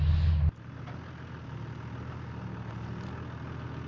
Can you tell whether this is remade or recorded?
recorded